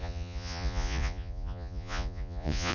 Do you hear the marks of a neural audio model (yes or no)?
yes